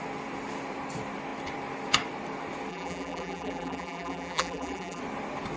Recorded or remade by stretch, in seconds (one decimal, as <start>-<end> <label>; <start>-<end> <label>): 0.0-2.7 recorded; 2.7-5.0 remade; 5.0-5.6 recorded